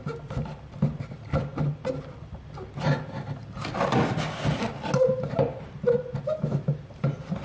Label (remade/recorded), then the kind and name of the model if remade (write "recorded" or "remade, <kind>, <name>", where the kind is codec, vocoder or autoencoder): recorded